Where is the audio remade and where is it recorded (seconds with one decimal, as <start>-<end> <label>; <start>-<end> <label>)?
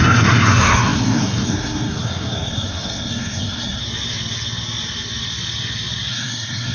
0.0-3.8 remade; 3.8-6.1 recorded; 6.1-6.7 remade